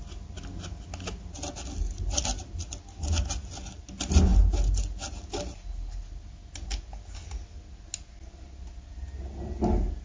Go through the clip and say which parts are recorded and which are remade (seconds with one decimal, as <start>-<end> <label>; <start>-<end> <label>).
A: 0.0-10.0 recorded